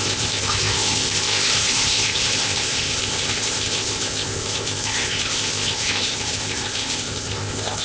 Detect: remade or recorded remade